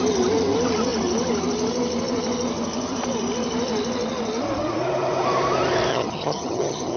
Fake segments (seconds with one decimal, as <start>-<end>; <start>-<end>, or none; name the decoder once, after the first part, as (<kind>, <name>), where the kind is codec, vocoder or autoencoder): 5.9-7.0 (vocoder, HiFi-GAN)

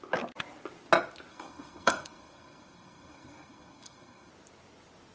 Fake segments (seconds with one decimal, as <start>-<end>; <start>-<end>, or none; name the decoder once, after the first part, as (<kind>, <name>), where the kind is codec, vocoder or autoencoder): 1.3-4.3 (codec, SNAC)

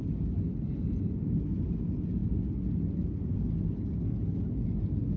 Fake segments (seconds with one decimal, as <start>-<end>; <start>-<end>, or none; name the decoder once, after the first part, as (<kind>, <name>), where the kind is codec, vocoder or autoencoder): none